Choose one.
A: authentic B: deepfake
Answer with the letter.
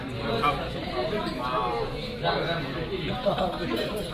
A